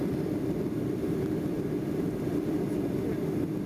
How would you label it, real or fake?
real